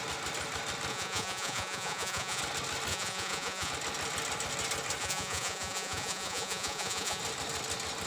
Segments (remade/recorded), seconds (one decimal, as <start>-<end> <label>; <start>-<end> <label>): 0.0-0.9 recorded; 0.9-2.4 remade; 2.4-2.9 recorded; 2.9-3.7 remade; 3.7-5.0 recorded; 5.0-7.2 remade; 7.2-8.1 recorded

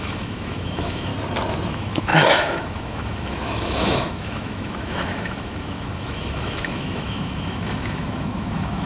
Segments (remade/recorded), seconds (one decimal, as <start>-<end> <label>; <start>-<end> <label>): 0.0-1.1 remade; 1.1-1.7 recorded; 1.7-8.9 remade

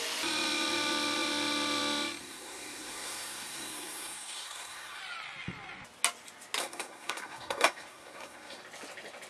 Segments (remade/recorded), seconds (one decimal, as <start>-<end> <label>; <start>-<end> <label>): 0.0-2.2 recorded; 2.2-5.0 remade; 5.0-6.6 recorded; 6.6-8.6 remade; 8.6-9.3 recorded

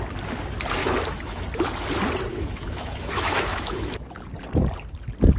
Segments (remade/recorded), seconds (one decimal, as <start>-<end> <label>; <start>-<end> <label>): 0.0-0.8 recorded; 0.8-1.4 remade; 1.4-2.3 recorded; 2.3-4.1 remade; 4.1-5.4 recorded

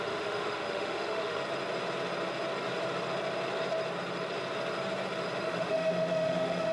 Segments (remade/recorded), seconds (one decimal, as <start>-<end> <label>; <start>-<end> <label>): 0.0-1.4 remade; 1.4-5.4 recorded; 5.4-6.7 remade

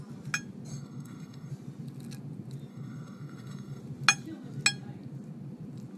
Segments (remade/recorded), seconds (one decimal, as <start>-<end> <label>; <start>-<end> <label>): 0.0-0.7 recorded; 0.7-1.5 remade; 1.5-2.7 recorded; 2.7-3.8 remade; 3.8-6.0 recorded